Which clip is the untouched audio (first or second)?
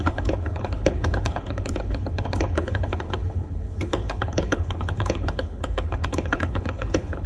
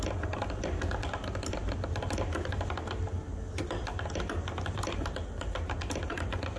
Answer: second